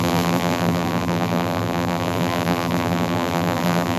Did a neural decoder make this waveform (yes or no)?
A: yes